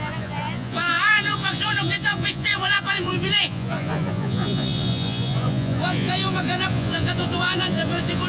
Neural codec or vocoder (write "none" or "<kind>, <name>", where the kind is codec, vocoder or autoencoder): vocoder, Vocos